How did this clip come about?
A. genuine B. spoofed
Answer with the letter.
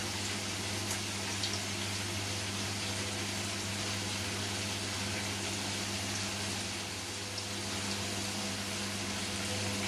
A